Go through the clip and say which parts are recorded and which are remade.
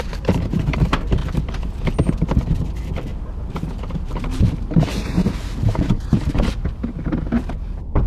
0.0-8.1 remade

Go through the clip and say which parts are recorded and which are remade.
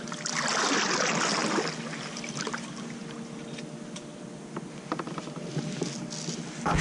0.0-6.8 recorded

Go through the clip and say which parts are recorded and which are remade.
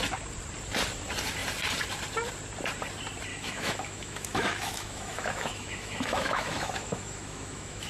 0.0-3.3 recorded; 3.3-7.9 remade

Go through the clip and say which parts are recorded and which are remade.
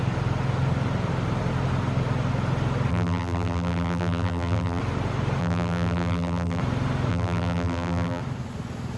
0.0-2.9 recorded; 2.9-4.8 remade; 4.8-5.4 recorded; 5.4-6.6 remade; 6.6-7.1 recorded; 7.1-8.2 remade; 8.2-9.0 recorded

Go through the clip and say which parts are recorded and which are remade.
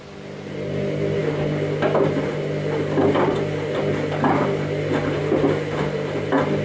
0.0-6.6 recorded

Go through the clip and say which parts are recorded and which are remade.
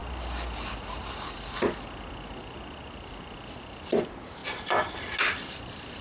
0.0-6.0 recorded